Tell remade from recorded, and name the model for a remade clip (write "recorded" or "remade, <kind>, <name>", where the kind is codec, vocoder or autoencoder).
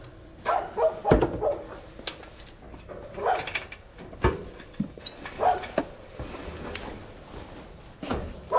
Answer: recorded